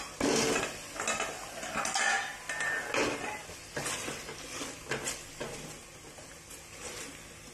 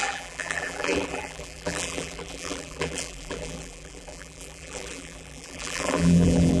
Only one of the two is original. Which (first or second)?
first